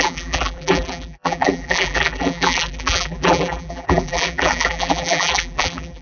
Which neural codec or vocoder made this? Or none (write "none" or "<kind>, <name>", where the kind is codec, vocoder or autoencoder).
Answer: vocoder, BigVGAN v2